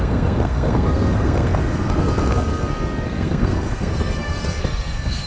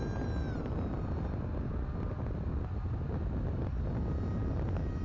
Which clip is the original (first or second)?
second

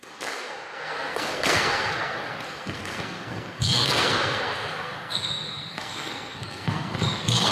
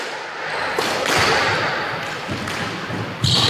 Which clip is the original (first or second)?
second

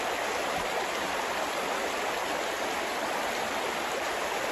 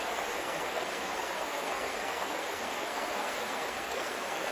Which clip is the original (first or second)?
first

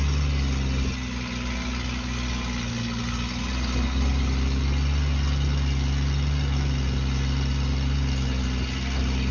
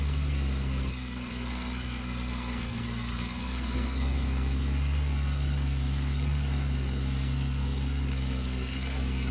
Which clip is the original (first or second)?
first